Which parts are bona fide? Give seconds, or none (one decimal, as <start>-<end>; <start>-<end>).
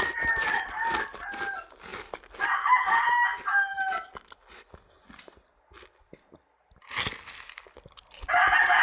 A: 0.0-8.8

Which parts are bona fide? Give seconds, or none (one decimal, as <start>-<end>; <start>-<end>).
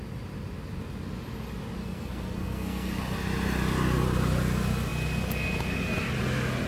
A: 0.0-1.8; 3.0-6.7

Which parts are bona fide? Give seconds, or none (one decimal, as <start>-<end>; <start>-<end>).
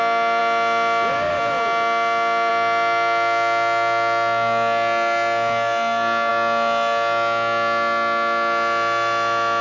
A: 0.0-9.6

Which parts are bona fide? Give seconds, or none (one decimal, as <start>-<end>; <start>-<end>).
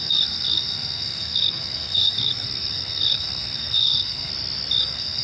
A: 4.3-4.8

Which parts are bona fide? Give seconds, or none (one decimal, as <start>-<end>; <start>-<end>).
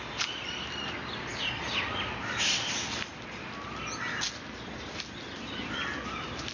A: 0.0-6.5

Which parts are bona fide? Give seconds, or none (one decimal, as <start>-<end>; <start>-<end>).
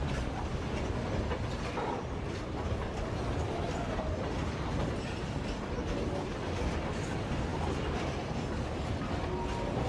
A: 0.0-9.9